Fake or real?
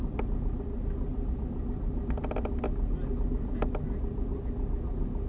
real